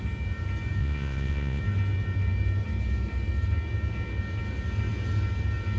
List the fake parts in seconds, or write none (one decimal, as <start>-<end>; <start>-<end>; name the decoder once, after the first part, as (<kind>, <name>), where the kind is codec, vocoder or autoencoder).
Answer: 0.8-1.6 (vocoder, Vocos)